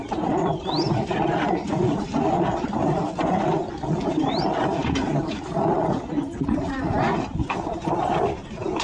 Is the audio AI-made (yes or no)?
no